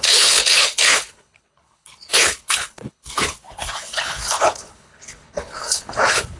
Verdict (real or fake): fake